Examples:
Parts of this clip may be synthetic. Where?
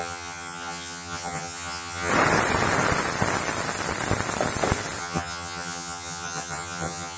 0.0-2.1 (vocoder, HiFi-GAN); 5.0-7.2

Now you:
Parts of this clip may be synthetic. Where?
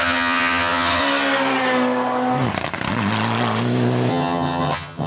0.0-1.0 (vocoder, HiFi-GAN); 4.1-5.1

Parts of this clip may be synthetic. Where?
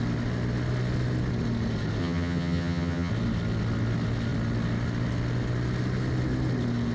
2.0-3.1 (vocoder, HiFi-GAN)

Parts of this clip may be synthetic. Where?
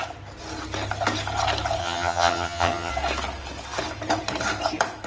1.8-2.9 (vocoder, HiFi-GAN)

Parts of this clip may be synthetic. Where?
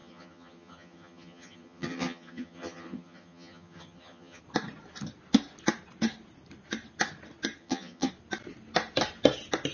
0.0-4.4 (vocoder, HiFi-GAN); 7.6-8.1